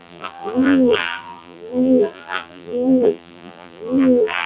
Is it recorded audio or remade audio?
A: remade